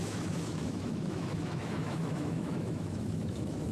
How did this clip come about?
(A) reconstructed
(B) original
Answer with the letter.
A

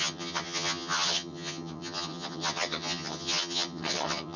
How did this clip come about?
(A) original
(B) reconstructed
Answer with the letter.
B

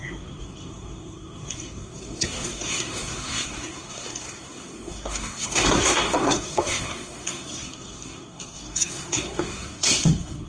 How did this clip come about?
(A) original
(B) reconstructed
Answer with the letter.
B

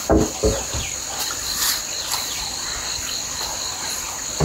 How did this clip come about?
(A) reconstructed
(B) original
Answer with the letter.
B